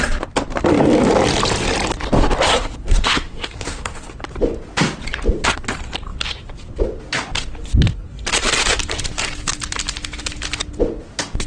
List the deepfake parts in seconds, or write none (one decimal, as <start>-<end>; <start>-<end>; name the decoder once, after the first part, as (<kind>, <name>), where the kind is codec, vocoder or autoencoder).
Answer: 2.5-4.1 (codec, SNAC)